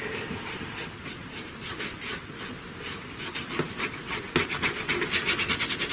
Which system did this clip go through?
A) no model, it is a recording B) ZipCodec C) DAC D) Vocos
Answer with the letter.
A